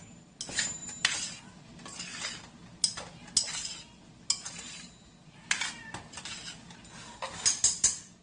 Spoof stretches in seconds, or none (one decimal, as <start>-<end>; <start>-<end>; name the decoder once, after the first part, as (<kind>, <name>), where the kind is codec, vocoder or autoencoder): none